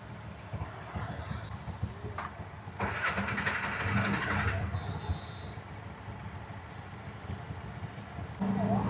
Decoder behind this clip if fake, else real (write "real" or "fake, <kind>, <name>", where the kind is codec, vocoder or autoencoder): real